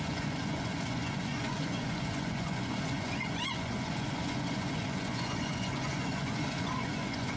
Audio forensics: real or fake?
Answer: fake